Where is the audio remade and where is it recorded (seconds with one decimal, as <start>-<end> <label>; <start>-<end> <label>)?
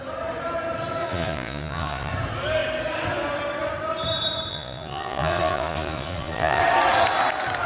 0.0-1.0 recorded; 1.0-2.1 remade; 2.1-4.5 recorded; 4.5-6.6 remade; 6.6-7.7 recorded